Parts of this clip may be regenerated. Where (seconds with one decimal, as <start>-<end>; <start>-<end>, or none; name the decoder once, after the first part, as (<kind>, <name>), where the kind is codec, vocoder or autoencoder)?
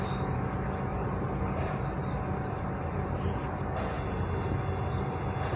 0.9-4.3 (vocoder, BigVGAN v2)